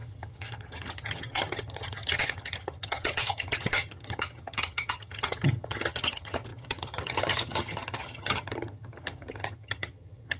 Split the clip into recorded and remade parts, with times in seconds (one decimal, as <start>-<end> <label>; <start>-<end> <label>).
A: 0.0-10.4 remade

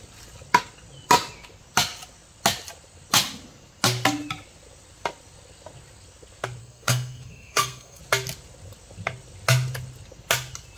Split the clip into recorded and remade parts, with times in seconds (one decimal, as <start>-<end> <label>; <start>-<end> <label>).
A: 0.0-6.6 recorded; 6.6-8.0 remade; 8.0-10.8 recorded

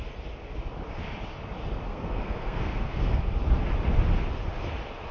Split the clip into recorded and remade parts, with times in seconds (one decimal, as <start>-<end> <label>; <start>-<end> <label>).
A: 0.0-1.9 recorded; 1.9-3.2 remade; 3.2-5.1 recorded

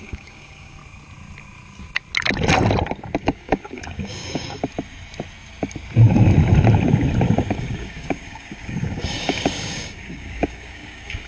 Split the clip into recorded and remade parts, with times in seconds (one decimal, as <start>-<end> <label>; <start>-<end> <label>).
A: 0.0-0.8 remade; 0.8-3.2 recorded; 3.2-4.6 remade; 4.6-7.5 recorded; 7.5-11.3 remade

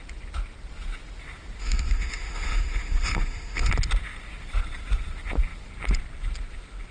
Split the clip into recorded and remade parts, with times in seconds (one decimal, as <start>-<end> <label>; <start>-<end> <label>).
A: 0.0-1.6 recorded; 1.6-3.7 remade; 3.7-6.9 recorded

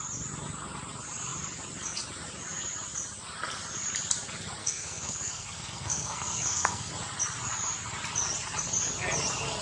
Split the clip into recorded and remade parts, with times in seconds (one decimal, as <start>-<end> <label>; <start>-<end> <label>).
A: 0.0-4.6 recorded; 4.6-6.9 remade; 6.9-9.6 recorded

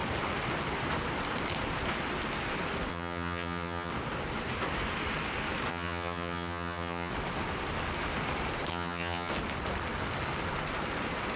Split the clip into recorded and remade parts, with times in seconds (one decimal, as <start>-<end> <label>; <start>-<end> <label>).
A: 0.0-2.9 recorded; 2.9-3.9 remade; 3.9-5.7 recorded; 5.7-7.1 remade; 7.1-8.7 recorded; 8.7-9.3 remade; 9.3-11.4 recorded